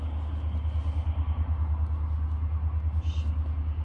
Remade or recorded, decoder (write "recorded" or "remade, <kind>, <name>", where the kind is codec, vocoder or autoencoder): recorded